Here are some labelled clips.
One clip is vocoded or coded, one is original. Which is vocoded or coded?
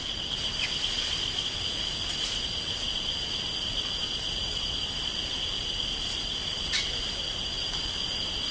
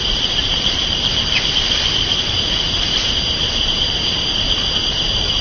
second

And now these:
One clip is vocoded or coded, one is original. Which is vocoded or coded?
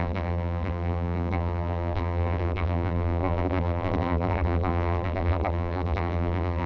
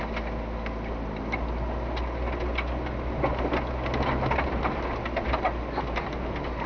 first